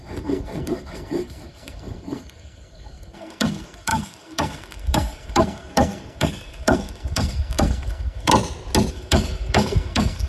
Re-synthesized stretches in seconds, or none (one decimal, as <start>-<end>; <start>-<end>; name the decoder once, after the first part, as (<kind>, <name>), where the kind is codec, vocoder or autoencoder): 0.0-8.3 (codec, SNAC); 8.9-10.3